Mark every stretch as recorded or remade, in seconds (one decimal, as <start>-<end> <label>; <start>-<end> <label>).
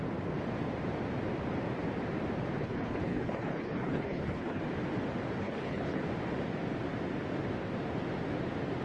0.0-2.6 recorded; 2.6-4.6 remade; 4.6-5.4 recorded; 5.4-6.0 remade; 6.0-8.8 recorded